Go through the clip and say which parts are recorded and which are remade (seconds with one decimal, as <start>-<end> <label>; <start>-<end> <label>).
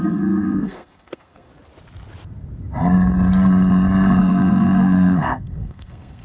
0.0-1.5 remade; 1.5-4.2 recorded; 4.2-6.2 remade